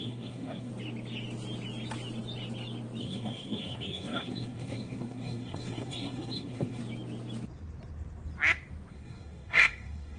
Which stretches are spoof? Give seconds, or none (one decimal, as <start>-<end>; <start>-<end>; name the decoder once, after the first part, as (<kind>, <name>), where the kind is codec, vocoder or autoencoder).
0.0-0.7 (codec, SNAC); 3.0-6.8; 8.9-10.2